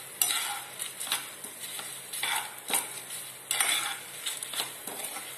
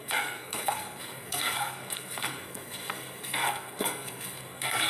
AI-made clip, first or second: second